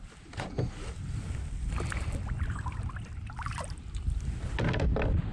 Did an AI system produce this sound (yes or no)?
no